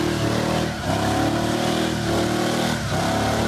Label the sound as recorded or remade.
recorded